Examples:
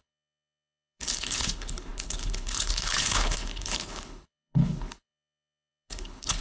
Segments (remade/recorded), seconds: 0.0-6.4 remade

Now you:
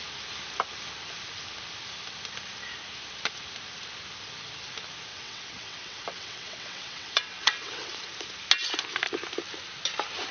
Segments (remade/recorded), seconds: 0.0-5.1 recorded; 5.1-8.1 remade; 8.1-10.3 recorded

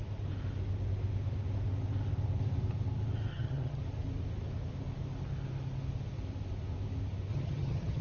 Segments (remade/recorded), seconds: 0.0-3.3 recorded; 3.3-3.8 remade; 3.8-7.3 recorded; 7.3-8.0 remade

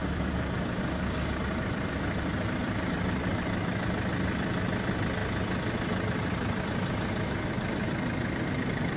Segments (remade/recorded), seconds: 0.0-9.0 recorded

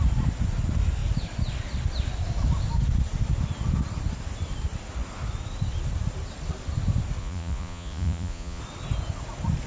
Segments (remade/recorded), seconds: 0.0-7.2 recorded; 7.2-8.6 remade; 8.6-9.7 recorded

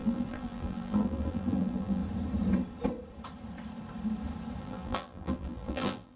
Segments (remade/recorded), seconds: 0.0-2.0 remade; 2.0-4.6 recorded; 4.6-6.2 remade

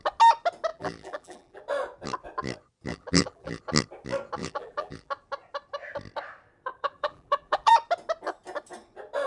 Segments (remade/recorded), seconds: 0.0-0.7 recorded; 0.7-1.6 remade; 1.6-2.9 recorded; 2.9-3.6 remade; 3.6-4.4 recorded; 4.4-5.1 remade; 5.1-6.7 recorded; 6.7-7.7 remade; 7.7-9.3 recorded

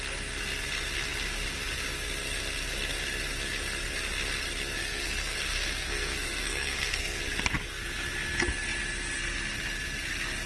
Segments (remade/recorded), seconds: 0.0-4.8 recorded; 4.8-7.2 remade; 7.2-10.5 recorded